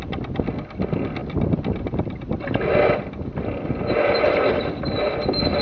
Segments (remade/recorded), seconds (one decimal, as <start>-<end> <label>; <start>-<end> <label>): 0.0-5.6 recorded